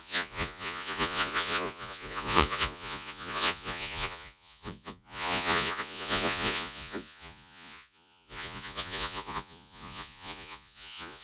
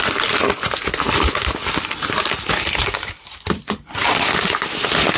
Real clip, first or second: second